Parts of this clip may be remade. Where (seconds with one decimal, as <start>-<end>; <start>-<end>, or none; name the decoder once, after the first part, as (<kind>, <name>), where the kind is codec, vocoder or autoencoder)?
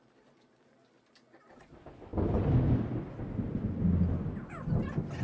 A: none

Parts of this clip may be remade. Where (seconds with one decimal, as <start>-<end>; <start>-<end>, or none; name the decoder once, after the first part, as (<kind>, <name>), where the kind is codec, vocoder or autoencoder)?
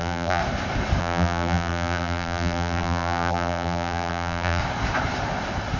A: 0.0-0.4 (vocoder, BigVGAN v2); 1.0-4.6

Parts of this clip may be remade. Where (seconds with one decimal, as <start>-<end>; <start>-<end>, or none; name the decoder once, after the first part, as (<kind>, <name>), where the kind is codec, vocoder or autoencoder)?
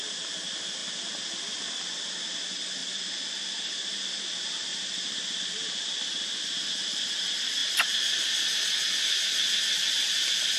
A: 2.8-4.1 (vocoder, BigVGAN v2); 4.7-6.4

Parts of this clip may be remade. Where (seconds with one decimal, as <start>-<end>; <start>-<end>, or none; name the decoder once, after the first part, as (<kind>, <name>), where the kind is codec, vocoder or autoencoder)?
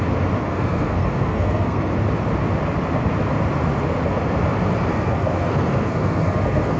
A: 0.4-1.9 (codec, SNAC); 4.9-6.8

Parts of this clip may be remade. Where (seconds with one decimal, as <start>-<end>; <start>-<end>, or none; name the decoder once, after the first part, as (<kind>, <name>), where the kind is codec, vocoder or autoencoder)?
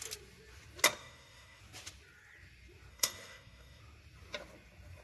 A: 1.0-1.6 (codec, DAC); 2.9-3.8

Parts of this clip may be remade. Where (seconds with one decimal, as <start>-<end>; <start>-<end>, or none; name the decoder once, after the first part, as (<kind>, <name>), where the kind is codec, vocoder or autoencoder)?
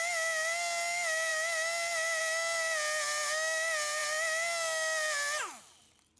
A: none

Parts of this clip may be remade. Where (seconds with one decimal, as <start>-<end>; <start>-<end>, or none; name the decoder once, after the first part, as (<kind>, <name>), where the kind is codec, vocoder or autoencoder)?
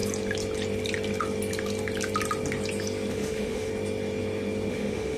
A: 3.1-3.7 (autoencoder, DAC-VAE); 4.7-5.2